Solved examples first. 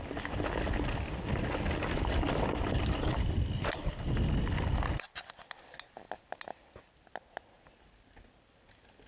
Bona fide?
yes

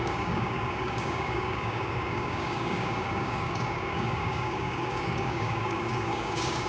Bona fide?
no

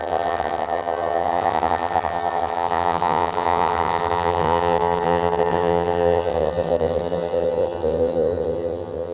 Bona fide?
no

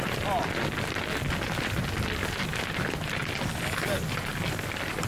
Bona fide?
yes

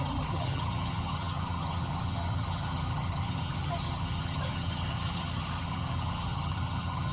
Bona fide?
no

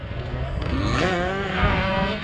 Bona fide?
no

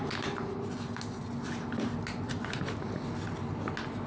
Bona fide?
yes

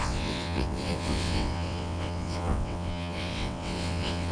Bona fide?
no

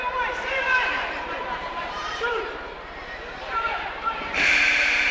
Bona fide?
no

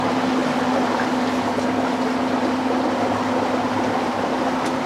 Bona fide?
yes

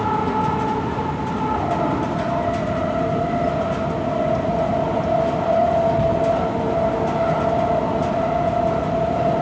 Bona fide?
yes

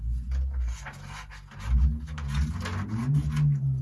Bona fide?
yes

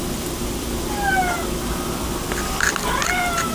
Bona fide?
yes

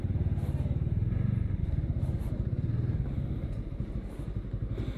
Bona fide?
no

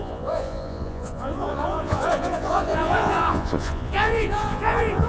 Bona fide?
no